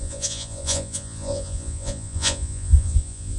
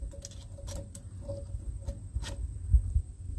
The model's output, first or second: first